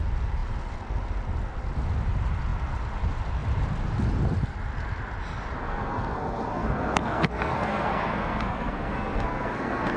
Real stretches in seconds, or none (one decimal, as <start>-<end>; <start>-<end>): 0.0-5.6